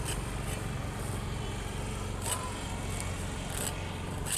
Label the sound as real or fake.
real